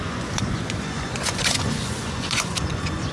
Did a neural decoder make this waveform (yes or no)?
yes